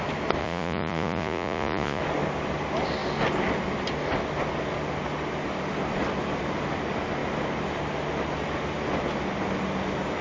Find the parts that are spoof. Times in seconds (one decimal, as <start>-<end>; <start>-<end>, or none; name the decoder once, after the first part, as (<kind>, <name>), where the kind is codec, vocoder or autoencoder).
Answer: 0.4-2.0 (vocoder, Vocos)